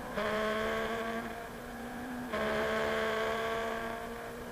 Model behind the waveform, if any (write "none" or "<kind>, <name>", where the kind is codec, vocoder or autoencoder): vocoder, BigVGAN v2